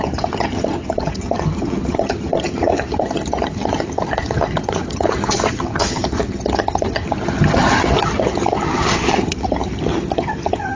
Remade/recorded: remade